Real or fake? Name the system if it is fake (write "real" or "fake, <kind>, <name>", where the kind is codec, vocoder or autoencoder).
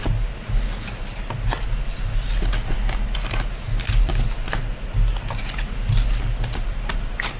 real